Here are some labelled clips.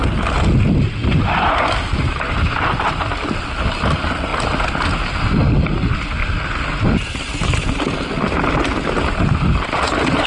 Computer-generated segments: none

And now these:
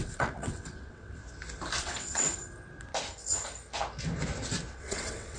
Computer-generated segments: 0.0-1.2 (vocoder, WaveNeXt); 1.8-2.3; 4.7-5.4